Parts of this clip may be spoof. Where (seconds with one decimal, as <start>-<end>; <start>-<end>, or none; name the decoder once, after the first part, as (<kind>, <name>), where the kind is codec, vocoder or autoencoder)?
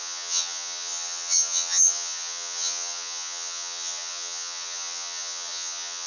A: 0.0-6.1 (vocoder, HiFi-GAN)